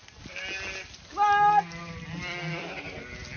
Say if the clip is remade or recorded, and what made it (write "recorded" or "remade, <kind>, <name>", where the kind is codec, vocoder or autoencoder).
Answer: recorded